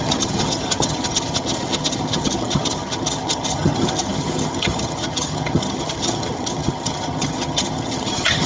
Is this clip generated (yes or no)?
yes